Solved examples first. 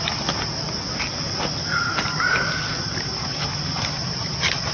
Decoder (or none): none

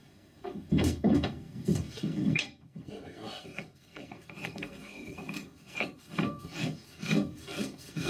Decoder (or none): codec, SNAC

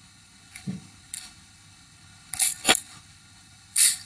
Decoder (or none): codec, HILCodec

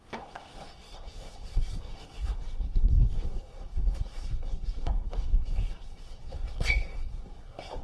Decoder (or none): codec, SNAC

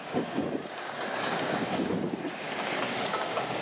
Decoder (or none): codec, DAC